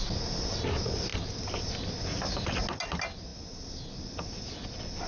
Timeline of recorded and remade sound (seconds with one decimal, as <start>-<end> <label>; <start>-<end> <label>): 0.0-5.1 recorded